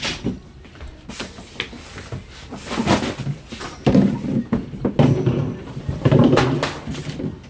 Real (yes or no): yes